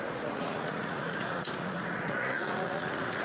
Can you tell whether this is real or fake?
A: fake